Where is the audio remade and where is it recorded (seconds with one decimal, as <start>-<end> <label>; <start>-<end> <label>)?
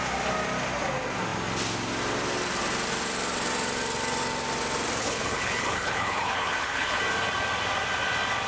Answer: 0.0-5.0 recorded; 5.0-7.0 remade; 7.0-8.5 recorded